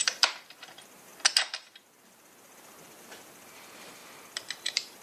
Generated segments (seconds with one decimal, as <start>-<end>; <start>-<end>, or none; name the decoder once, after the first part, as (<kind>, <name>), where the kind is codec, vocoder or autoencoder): 0.0-1.1 (vocoder, BigVGAN v2); 1.7-4.0; 4.6-5.0